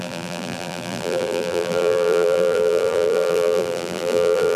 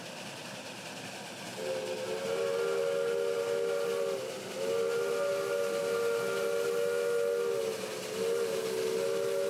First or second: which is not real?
first